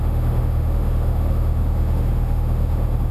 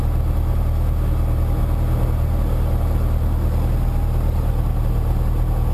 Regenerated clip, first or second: first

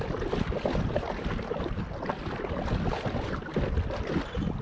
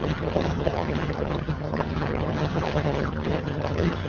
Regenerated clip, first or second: second